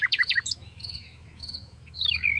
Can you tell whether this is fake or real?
fake